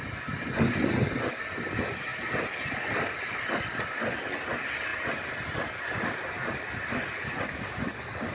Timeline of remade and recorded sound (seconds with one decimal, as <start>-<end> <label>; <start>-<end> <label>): 0.0-8.3 recorded